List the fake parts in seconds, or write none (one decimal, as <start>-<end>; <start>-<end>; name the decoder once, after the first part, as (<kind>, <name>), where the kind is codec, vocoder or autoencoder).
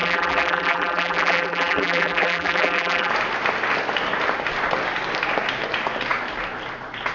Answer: 0.0-3.1 (vocoder, BigVGAN v2)